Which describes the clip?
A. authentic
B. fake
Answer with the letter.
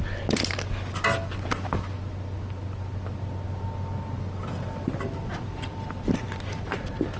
A